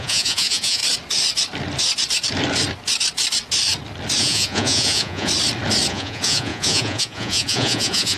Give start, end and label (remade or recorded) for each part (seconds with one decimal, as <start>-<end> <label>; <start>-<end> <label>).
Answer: 0.0-0.8 remade; 0.8-4.2 recorded; 4.2-5.3 remade; 5.3-5.9 recorded; 5.9-8.2 remade